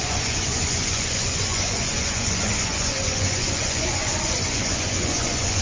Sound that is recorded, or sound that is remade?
remade